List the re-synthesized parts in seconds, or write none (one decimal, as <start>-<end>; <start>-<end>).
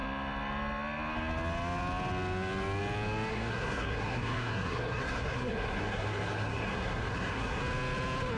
3.3-7.6